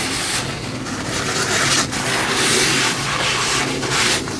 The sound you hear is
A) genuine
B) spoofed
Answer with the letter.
A